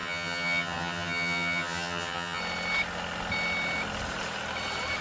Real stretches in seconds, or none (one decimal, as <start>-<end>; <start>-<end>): 2.4-5.0